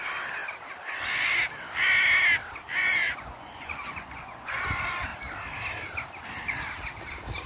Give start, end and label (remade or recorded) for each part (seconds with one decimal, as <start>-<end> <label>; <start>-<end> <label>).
0.0-2.8 recorded; 2.8-4.6 remade; 4.6-7.5 recorded

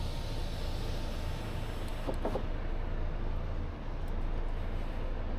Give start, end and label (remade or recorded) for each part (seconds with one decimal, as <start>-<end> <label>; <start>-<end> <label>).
0.0-5.4 recorded

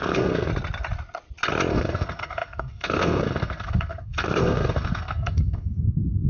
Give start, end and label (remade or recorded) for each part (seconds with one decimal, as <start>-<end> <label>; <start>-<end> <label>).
0.0-0.5 remade; 0.5-1.7 recorded; 1.7-6.3 remade